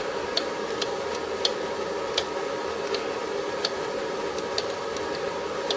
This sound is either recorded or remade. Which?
recorded